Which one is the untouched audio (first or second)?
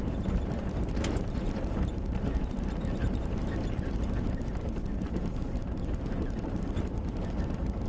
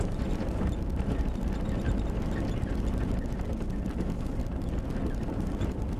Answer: second